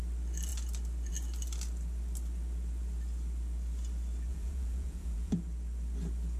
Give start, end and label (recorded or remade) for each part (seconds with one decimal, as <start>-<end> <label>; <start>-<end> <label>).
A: 0.0-4.3 recorded; 4.3-5.4 remade; 5.4-6.4 recorded